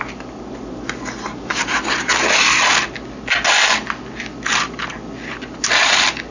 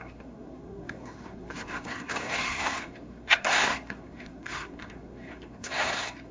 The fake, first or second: second